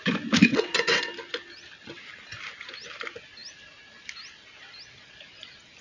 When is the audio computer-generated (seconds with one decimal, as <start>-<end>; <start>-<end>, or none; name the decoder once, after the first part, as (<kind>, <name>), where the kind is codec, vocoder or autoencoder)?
0.5-1.1 (vocoder, WaveNeXt)